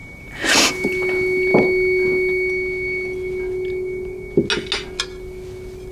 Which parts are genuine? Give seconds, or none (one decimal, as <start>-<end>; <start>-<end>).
0.7-5.9